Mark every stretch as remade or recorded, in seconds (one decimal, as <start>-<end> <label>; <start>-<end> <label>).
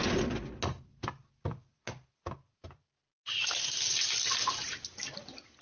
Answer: 0.0-5.6 recorded